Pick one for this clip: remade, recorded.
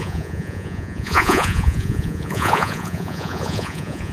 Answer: remade